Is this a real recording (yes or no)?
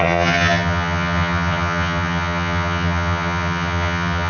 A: no